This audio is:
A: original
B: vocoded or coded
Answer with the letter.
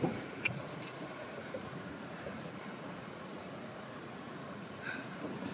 B